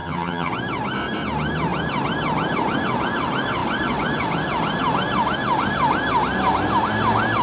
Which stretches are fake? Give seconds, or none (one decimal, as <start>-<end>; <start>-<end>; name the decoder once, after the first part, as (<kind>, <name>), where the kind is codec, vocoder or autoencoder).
0.0-0.5 (vocoder, HiFi-GAN)